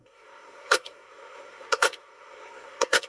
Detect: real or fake fake